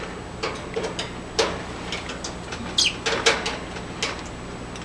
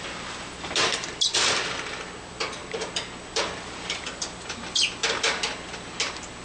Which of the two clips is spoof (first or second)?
second